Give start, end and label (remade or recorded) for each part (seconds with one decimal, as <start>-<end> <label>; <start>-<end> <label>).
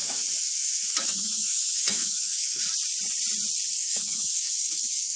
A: 0.0-2.6 remade; 2.6-3.8 recorded; 3.8-5.2 remade